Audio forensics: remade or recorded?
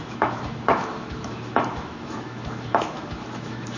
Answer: remade